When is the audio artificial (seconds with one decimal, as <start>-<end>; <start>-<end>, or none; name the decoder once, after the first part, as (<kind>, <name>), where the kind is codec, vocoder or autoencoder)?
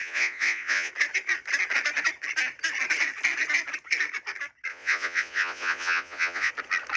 0.0-0.9 (vocoder, Vocos); 4.7-6.5